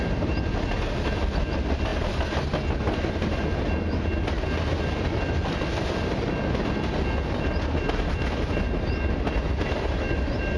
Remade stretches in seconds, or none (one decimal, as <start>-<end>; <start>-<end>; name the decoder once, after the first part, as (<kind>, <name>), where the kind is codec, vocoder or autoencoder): none